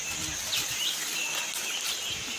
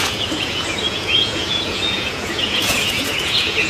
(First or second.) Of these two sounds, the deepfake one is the second